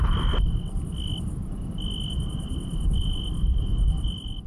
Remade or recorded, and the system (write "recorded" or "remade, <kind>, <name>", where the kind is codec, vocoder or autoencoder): recorded